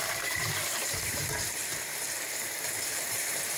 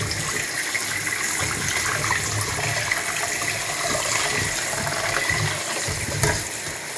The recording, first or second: second